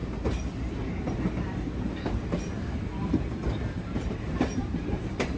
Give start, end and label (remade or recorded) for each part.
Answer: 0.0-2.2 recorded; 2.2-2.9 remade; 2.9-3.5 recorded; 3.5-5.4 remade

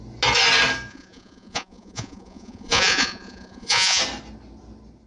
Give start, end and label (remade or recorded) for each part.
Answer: 0.0-0.9 recorded; 0.9-4.0 remade; 4.0-5.1 recorded

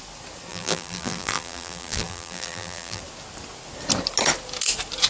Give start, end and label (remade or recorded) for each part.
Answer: 0.0-0.5 recorded; 0.5-3.0 remade; 3.0-5.1 recorded